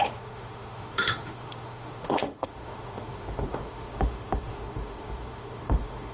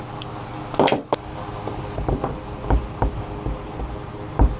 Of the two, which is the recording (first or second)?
second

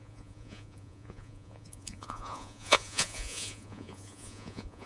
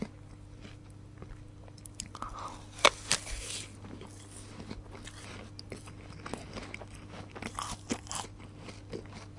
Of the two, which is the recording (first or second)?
second